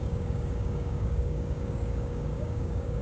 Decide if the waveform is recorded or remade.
remade